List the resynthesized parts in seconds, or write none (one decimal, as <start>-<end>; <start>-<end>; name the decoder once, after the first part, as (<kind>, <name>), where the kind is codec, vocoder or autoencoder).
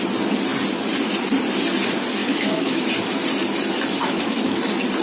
2.2-2.9 (autoencoder, DAC-VAE); 4.0-4.6